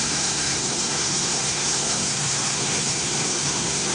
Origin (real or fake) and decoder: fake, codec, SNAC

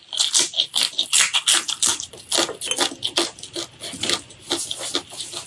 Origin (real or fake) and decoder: real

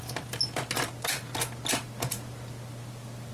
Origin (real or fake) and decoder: real